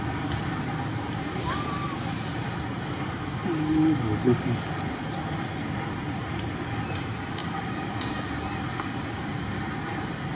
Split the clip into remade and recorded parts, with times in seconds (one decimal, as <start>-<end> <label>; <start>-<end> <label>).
0.0-10.3 recorded